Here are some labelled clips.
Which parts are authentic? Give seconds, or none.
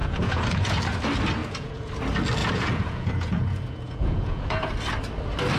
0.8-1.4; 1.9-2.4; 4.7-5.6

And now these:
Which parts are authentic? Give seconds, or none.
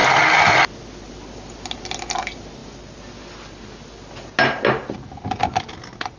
0.0-6.2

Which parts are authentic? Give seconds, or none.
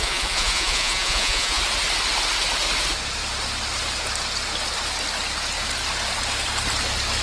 1.6-7.2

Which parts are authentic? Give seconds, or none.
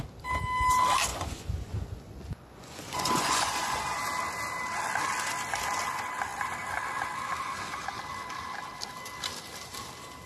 0.0-1.1; 4.0-10.3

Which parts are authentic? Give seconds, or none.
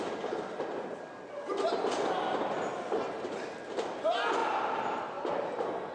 0.0-5.9